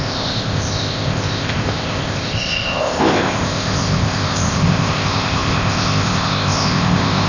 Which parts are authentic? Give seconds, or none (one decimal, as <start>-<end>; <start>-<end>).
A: none